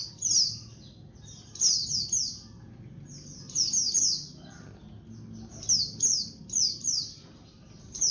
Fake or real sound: real